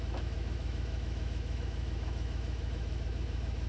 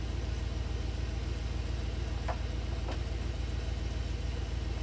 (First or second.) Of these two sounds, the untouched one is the second